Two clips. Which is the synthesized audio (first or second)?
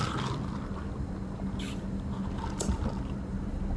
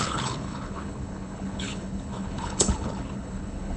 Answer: second